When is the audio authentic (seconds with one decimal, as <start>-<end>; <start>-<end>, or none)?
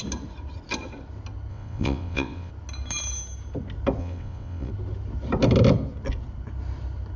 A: 0.0-1.5; 2.5-4.0; 4.7-7.2